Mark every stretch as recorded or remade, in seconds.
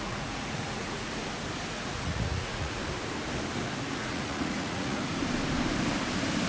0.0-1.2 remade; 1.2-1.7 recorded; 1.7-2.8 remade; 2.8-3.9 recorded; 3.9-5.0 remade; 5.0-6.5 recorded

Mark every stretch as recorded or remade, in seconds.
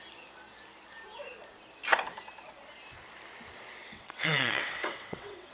0.0-3.8 recorded; 3.8-5.5 remade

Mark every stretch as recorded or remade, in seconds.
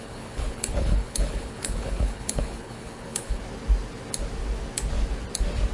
0.0-3.4 remade; 3.4-5.7 recorded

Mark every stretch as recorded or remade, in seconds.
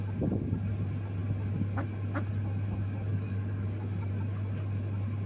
0.0-3.1 recorded; 3.1-4.1 remade; 4.1-5.3 recorded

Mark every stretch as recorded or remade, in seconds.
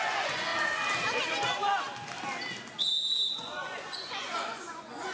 0.0-0.5 remade; 0.5-3.3 recorded; 3.3-5.1 remade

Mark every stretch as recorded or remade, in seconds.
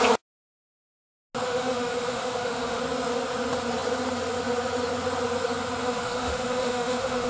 0.0-1.4 recorded; 1.4-2.8 remade; 2.8-5.8 recorded; 5.8-7.3 remade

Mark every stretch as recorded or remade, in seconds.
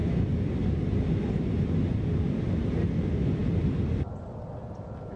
0.0-5.2 recorded